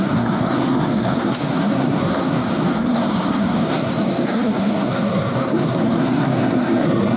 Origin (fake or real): fake